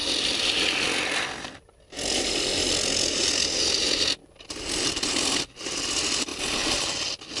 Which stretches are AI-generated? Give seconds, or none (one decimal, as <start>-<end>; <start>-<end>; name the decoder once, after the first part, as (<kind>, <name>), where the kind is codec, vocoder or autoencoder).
none